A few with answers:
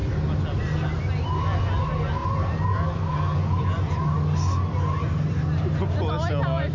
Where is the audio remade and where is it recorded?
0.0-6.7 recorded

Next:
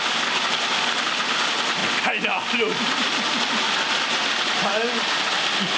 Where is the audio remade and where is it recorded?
0.0-5.8 recorded

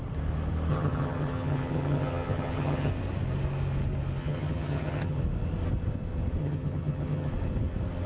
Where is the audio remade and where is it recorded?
0.0-0.7 recorded; 0.7-2.9 remade; 2.9-4.2 recorded; 4.2-5.2 remade; 5.2-6.4 recorded; 6.4-7.3 remade; 7.3-8.1 recorded